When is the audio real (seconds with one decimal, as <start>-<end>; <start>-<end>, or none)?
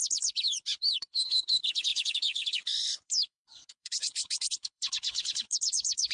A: none